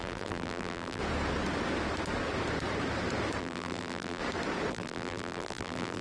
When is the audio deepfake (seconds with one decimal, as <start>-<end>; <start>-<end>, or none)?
0.0-1.0; 3.4-4.2; 4.7-6.0